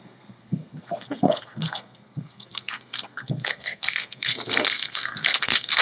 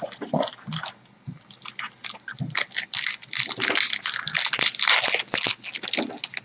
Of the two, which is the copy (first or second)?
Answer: first